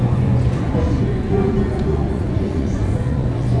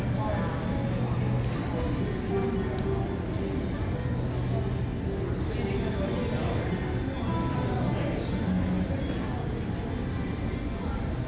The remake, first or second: first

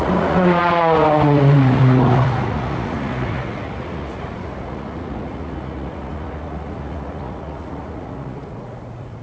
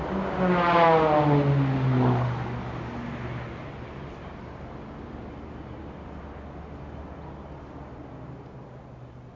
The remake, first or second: first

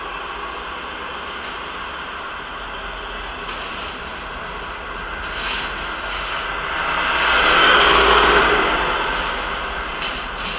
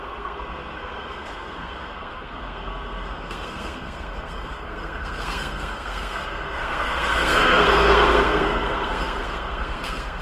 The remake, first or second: second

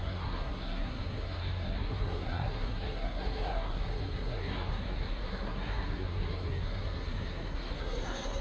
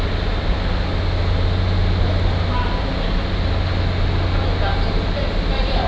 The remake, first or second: first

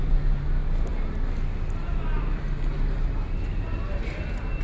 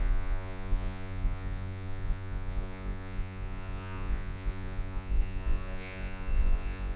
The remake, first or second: second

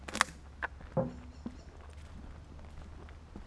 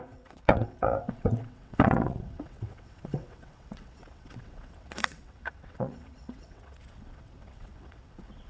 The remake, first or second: second